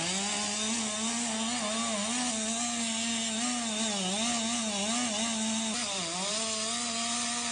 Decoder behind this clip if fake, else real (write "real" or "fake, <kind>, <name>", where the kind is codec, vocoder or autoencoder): real